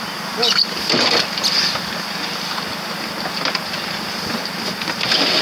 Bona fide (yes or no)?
yes